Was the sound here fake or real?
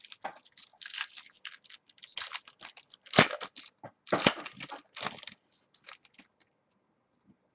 real